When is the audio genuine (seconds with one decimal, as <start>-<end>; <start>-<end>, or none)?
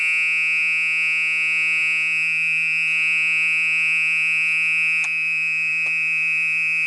0.0-6.9